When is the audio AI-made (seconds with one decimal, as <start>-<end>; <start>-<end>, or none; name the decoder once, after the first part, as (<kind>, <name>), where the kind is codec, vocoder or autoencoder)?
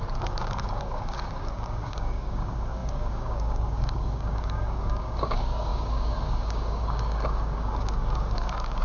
0.0-8.8 (codec, DAC)